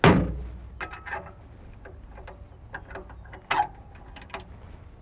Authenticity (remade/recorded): recorded